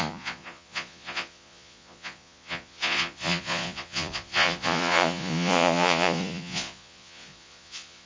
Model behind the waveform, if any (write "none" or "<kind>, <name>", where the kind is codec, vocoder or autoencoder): vocoder, Vocos